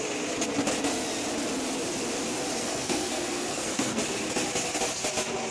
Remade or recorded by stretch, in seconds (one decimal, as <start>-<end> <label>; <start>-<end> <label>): 0.0-2.5 recorded; 2.5-4.0 remade; 4.0-5.5 recorded